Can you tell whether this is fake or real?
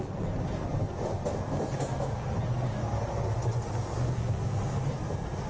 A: real